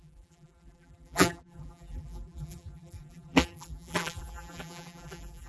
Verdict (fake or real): fake